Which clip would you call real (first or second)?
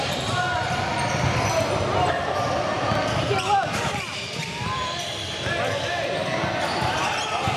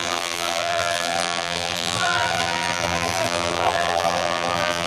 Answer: first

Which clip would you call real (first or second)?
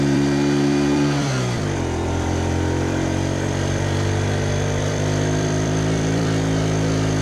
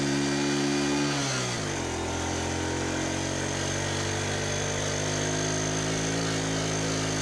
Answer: second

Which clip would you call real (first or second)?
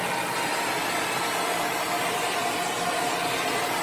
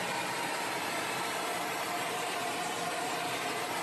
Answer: first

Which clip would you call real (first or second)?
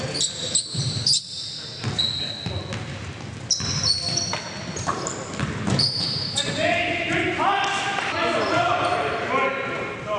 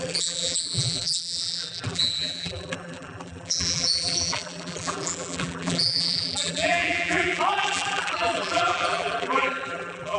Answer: first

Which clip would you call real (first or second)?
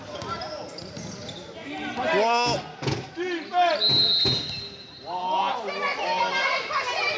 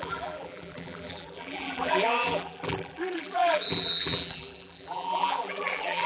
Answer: first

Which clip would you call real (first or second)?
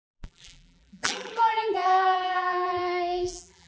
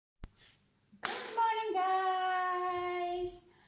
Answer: second